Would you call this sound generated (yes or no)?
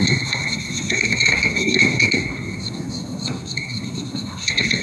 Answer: yes